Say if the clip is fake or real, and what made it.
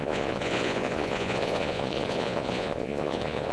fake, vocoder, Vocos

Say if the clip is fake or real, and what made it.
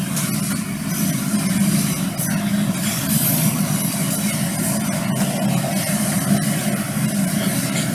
real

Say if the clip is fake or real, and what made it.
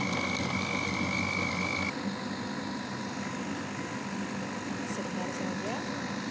real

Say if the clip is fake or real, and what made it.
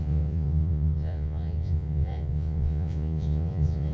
fake, vocoder, Vocos